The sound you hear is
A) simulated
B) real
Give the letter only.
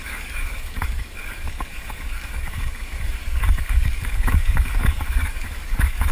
A